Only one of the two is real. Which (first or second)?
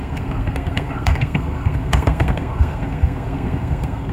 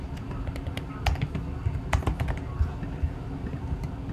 second